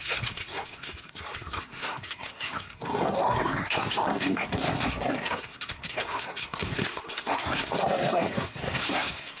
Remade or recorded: remade